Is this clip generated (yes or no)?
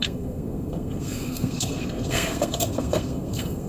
yes